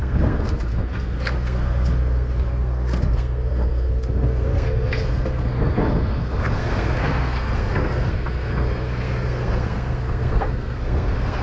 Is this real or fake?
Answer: fake